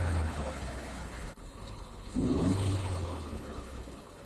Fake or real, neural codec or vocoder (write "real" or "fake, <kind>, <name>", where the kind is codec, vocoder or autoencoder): fake, codec, HILCodec